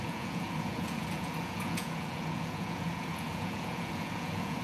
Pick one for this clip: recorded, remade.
remade